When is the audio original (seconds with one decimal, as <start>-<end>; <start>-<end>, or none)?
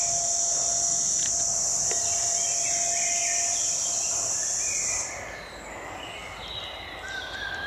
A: 0.0-7.7